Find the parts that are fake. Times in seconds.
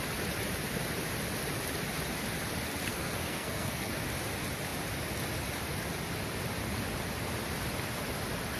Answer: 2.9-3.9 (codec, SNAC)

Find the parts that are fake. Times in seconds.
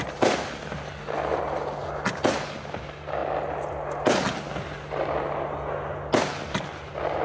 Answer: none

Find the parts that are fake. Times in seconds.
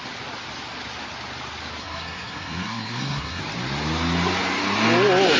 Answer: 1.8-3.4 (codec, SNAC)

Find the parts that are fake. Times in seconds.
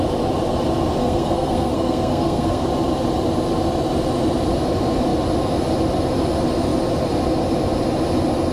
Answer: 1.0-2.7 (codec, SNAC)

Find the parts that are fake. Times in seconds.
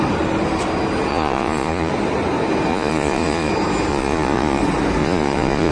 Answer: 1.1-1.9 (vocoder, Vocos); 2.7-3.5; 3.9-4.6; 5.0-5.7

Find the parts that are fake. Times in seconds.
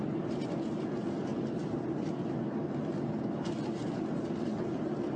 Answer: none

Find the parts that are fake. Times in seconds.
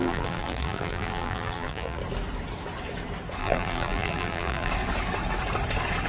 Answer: 0.0-2.0 (vocoder, BigVGAN v2); 3.4-4.7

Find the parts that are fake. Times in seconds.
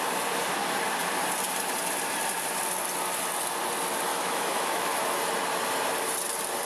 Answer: 4.1-4.9 (autoencoder, DAC-VAE)